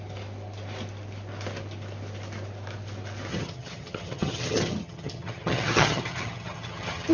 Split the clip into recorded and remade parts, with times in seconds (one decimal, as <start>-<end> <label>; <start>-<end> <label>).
0.0-3.3 recorded; 3.3-7.1 remade